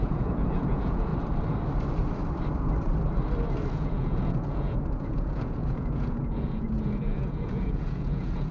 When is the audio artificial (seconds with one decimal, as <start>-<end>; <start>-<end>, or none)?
0.0-1.1; 3.7-8.5